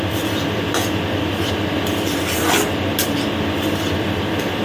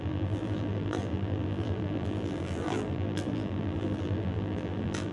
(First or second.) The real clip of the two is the first